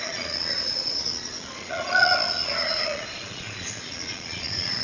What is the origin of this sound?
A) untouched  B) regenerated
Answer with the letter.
B